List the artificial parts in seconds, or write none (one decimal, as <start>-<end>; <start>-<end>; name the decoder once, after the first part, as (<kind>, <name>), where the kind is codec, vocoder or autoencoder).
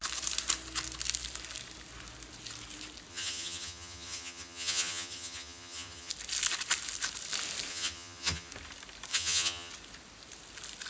3.1-6.1 (vocoder, HiFi-GAN); 7.7-8.5; 9.1-9.7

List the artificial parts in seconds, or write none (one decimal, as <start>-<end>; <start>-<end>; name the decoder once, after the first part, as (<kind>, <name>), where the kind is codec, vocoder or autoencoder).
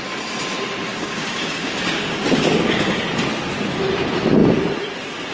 0.9-3.0 (codec, DAC)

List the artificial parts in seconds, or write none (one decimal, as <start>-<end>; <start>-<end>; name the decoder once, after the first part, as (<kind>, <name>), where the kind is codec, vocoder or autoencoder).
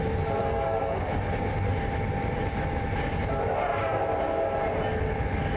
0.4-1.1 (codec, SNAC)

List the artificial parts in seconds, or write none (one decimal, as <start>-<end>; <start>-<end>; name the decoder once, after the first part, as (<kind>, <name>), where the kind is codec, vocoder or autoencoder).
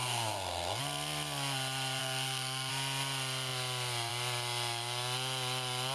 0.0-0.8 (codec, SNAC); 2.0-2.7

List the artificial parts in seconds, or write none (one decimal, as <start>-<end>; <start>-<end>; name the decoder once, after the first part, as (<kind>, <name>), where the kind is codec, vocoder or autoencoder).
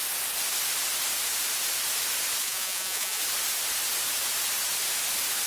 2.4-3.2 (vocoder, Vocos)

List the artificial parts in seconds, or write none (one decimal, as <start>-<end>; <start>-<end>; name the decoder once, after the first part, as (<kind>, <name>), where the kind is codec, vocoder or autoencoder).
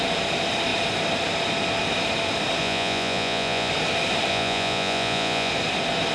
2.6-3.7 (vocoder, Vocos); 4.3-5.5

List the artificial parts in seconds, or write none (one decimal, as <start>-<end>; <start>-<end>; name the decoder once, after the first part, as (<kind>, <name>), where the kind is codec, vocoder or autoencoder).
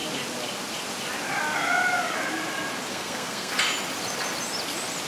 2.9-3.5 (codec, SNAC)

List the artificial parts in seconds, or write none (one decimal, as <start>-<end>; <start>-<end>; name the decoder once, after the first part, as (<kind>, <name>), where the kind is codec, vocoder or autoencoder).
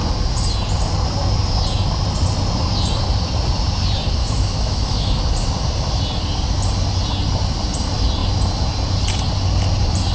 4.2-5.2 (autoencoder, DAC-VAE)